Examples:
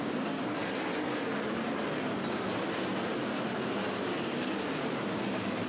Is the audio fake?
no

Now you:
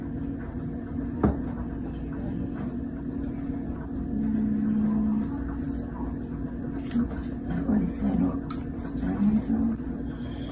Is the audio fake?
no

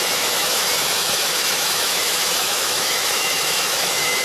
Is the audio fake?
yes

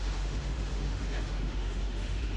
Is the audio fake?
yes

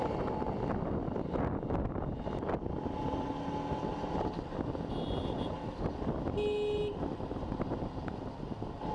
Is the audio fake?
no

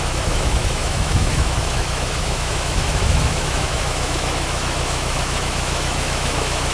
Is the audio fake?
yes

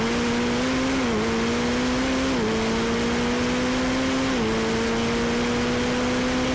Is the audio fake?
no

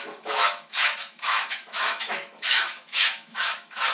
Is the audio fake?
yes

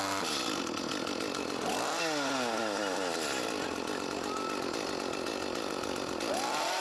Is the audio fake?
no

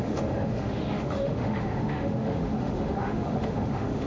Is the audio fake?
yes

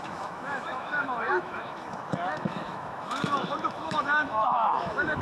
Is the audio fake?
yes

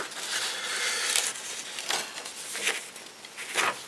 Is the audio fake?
no